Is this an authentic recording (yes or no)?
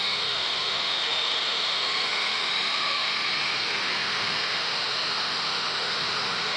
no